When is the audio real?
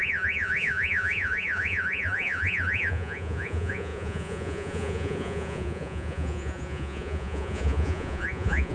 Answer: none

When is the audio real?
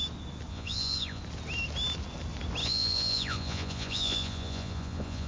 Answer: 0.0-0.5; 1.2-2.6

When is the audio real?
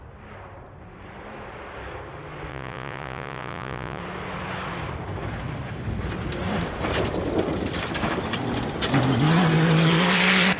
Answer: 0.0-2.5; 4.0-10.6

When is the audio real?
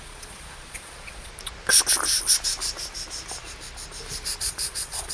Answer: 1.3-4.4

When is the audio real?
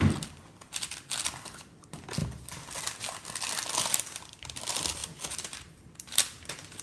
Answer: 0.0-6.8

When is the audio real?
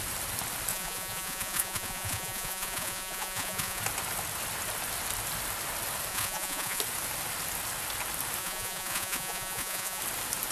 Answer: 0.0-0.7; 3.8-6.1; 6.8-8.4; 10.0-10.5